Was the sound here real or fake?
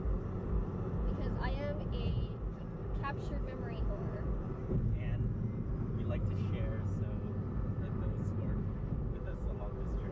real